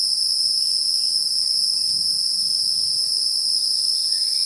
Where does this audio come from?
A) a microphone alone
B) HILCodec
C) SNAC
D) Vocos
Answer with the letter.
A